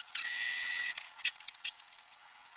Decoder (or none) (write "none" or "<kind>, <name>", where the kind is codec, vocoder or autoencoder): vocoder, WaveNeXt